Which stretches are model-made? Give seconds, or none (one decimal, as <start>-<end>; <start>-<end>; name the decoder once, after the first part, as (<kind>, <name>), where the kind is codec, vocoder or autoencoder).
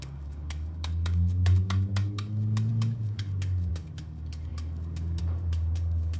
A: 0.0-6.2 (codec, DAC)